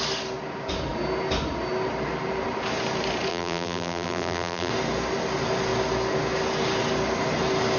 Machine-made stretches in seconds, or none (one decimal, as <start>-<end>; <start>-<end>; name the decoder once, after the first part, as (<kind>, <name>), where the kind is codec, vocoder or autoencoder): 3.3-4.7 (vocoder, BigVGAN v2)